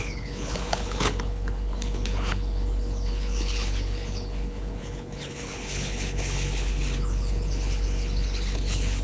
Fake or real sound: fake